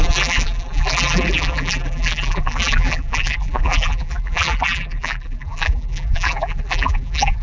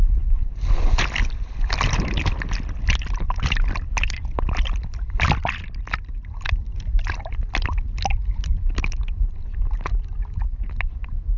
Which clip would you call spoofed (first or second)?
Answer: first